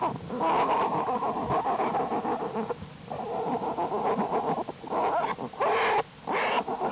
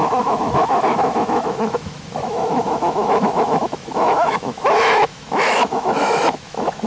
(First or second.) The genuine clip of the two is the first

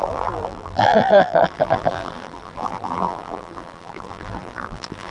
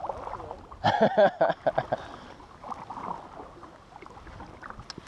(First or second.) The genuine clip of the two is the second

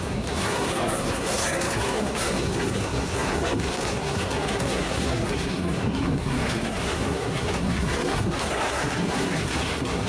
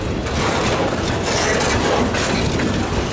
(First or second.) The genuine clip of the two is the second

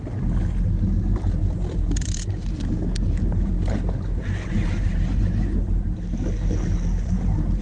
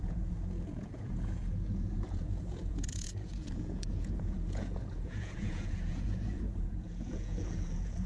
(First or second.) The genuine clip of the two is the first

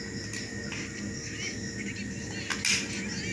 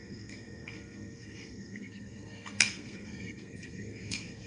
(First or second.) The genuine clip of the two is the first